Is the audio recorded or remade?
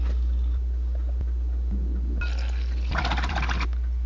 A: recorded